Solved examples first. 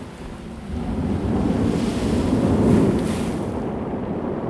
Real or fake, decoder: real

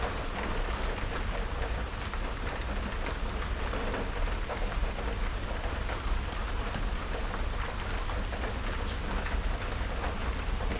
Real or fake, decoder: real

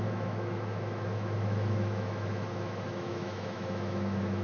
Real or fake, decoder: fake, autoencoder, DAC-VAE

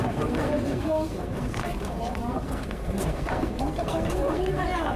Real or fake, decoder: fake, codec, SNAC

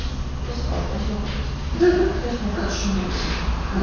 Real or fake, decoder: real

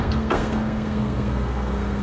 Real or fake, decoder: fake, codec, SNAC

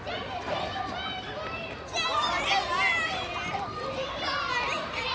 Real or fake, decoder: real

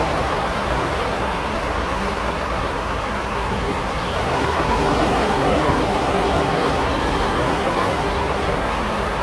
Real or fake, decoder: fake, codec, SNAC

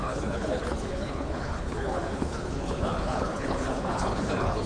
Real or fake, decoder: fake, codec, HILCodec